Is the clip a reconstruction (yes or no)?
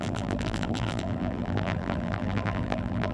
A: yes